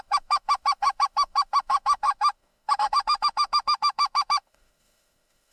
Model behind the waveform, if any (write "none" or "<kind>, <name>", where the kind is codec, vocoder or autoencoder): autoencoder, DAC-VAE